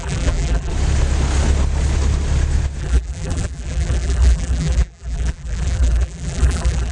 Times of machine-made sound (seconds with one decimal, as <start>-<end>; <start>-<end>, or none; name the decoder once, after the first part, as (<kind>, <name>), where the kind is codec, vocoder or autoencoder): 0.0-0.7 (vocoder, BigVGAN v2); 2.8-6.9